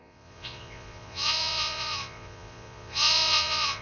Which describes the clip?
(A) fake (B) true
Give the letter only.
A